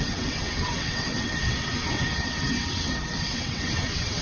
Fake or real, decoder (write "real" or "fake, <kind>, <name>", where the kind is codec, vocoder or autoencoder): fake, vocoder, WaveNeXt